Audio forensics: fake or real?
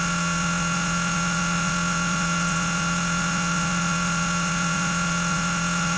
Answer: fake